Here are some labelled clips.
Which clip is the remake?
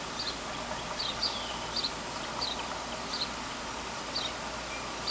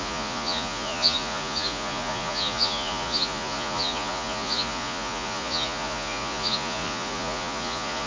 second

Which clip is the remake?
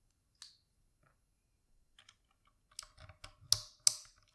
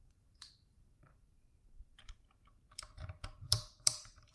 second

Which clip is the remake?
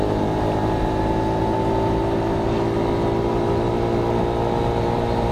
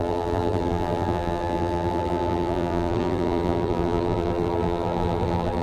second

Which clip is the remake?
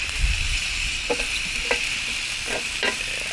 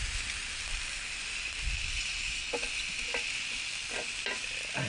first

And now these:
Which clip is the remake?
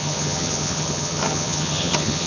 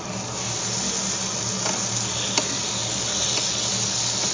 first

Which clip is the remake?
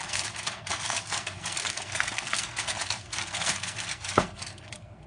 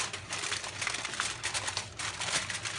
first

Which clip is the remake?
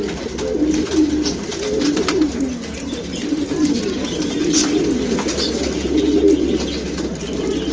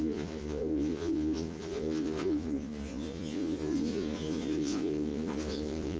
second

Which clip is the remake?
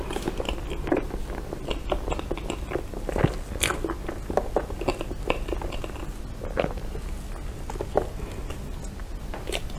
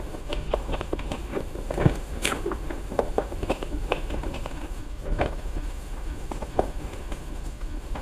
second